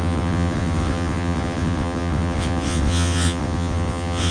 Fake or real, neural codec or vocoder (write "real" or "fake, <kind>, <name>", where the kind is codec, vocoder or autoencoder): fake, vocoder, WaveNeXt